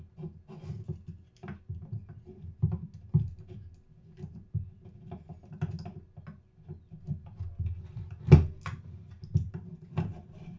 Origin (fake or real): real